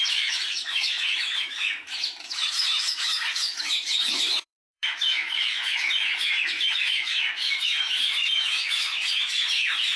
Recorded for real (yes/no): no